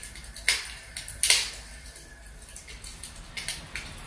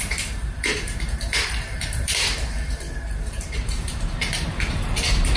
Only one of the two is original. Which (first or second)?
first